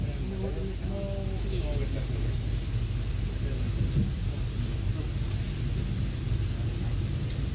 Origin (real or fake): real